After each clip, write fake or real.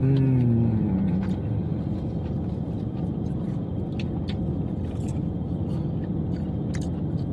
real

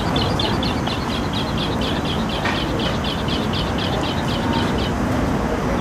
real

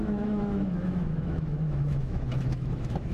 fake